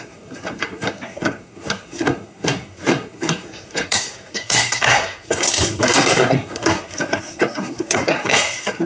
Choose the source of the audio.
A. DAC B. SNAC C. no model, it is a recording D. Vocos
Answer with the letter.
B